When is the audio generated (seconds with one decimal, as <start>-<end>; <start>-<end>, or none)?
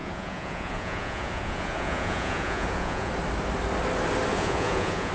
0.0-3.1; 4.3-5.1